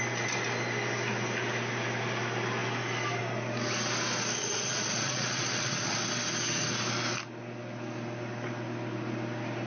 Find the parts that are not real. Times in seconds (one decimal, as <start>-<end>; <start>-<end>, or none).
4.4-6.0